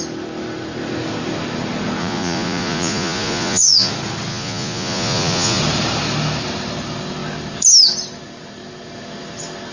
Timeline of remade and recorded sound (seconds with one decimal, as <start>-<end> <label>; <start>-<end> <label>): 0.0-2.0 recorded; 2.0-3.9 remade; 3.9-4.3 recorded; 4.3-5.6 remade; 5.6-9.7 recorded